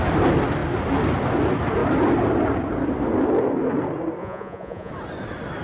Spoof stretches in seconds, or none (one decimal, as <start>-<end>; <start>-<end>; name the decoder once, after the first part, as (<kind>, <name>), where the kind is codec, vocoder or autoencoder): 4.2-4.9 (vocoder, Vocos)